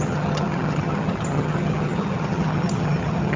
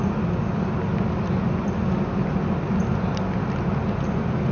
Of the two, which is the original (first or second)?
second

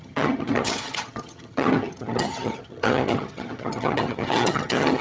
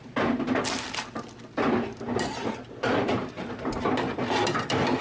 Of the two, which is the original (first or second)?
second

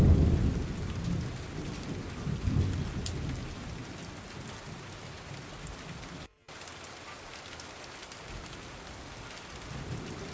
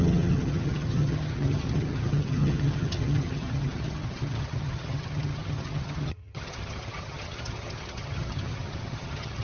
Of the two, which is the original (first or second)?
first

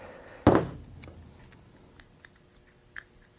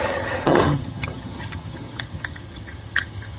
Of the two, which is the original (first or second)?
first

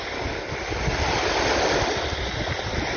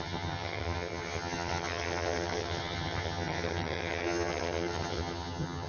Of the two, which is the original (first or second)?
first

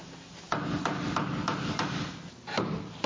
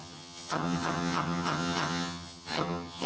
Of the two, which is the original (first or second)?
first